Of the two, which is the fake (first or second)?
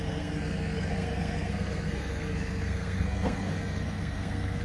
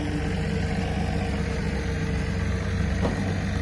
first